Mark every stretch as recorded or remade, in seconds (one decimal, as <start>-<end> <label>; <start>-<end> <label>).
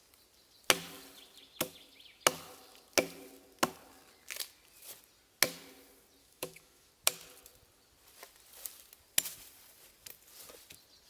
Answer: 0.0-6.2 recorded; 6.2-6.9 remade; 6.9-11.1 recorded